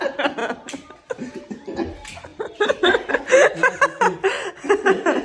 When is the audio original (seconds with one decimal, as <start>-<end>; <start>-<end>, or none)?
0.0-5.2